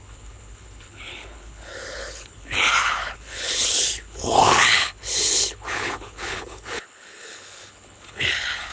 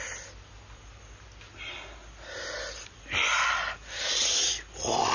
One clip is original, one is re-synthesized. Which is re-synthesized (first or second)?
first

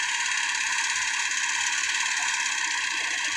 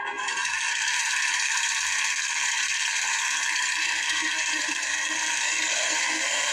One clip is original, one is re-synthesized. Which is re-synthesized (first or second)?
second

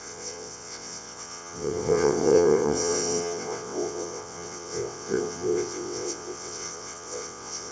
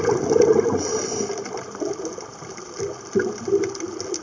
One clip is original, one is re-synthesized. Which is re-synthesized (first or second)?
first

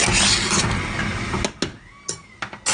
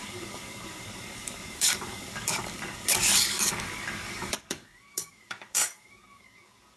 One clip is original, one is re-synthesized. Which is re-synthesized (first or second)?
second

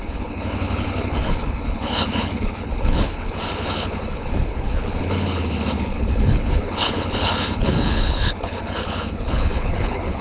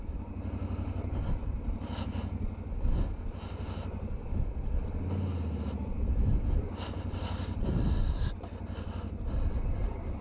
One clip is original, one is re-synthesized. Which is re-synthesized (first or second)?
first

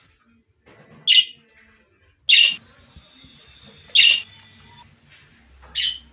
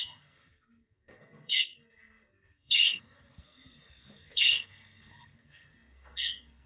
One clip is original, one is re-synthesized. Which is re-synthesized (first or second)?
second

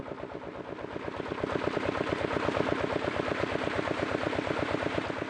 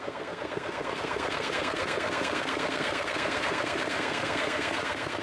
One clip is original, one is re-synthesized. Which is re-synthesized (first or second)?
second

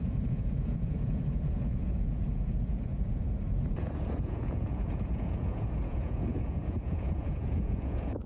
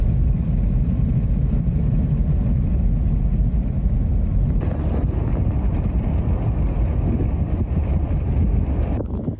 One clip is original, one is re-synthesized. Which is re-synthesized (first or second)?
first